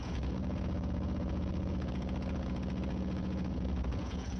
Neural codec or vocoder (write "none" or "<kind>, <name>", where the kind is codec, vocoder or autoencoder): vocoder, Vocos